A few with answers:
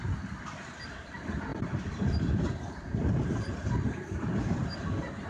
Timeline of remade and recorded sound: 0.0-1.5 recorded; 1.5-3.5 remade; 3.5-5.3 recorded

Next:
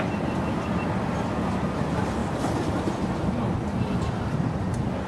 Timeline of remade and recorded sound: 0.0-2.2 recorded; 2.2-3.1 remade; 3.1-5.1 recorded

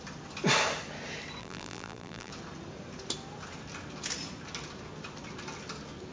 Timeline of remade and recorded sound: 0.0-1.4 recorded; 1.4-2.3 remade; 2.3-6.1 recorded